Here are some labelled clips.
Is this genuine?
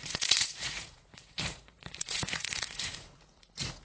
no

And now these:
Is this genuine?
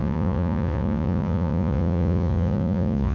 no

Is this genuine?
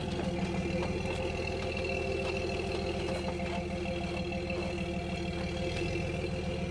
yes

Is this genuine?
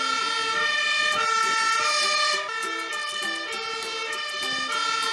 yes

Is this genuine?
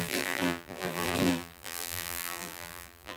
no